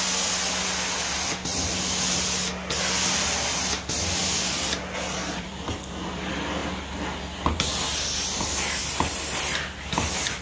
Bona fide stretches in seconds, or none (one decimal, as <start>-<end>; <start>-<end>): 0.0-5.2; 5.9-10.4